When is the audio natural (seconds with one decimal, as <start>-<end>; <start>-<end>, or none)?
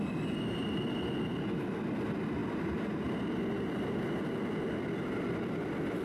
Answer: 0.0-0.6; 1.6-6.0